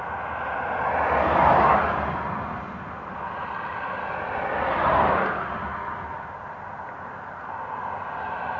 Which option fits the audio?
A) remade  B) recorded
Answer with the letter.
B